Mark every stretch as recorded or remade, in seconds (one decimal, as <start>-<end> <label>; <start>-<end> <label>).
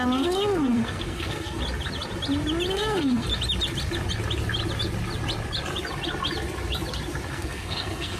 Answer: 0.0-1.6 remade; 1.6-2.7 recorded; 2.7-3.3 remade; 3.3-7.3 recorded; 7.3-8.2 remade